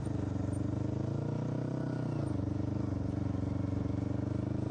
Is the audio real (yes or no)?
yes